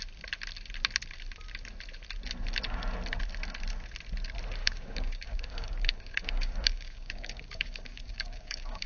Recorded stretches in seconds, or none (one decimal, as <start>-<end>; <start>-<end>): 0.0-4.6